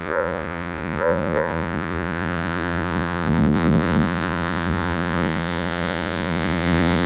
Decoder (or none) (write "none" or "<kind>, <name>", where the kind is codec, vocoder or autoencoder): vocoder, Vocos